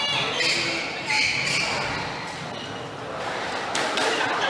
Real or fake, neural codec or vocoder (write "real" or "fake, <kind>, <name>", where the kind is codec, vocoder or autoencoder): real